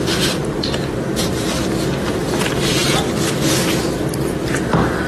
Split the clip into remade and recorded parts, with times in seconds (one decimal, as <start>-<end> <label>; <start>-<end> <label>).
0.0-5.1 recorded